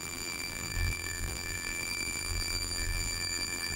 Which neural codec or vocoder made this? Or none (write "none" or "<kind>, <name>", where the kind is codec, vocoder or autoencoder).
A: vocoder, BigVGAN v2